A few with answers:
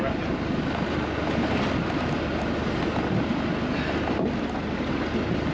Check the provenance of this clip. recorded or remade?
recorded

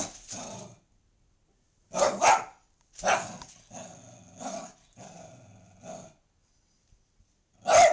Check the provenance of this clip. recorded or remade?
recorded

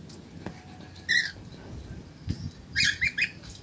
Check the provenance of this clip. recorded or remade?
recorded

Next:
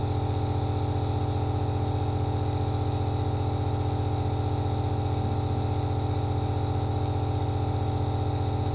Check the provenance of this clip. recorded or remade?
recorded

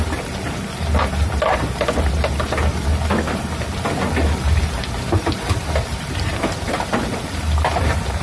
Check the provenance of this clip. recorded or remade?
recorded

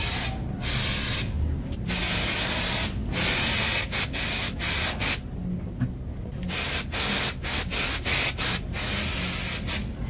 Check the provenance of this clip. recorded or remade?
recorded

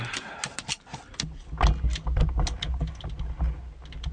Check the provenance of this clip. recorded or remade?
recorded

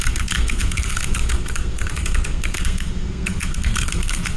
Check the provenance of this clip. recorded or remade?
remade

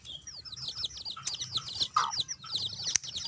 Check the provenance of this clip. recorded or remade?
recorded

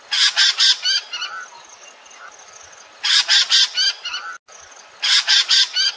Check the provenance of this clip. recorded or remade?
recorded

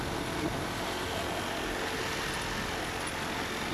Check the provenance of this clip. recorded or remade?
recorded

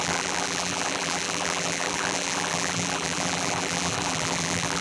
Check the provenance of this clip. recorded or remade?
remade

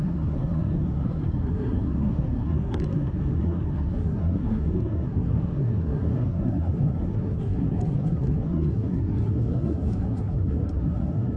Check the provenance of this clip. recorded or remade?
remade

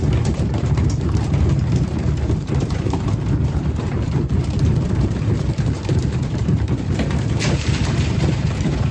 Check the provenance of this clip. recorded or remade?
remade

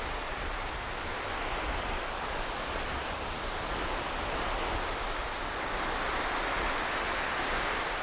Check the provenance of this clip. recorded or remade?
recorded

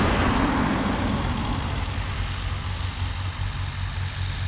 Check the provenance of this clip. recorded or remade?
recorded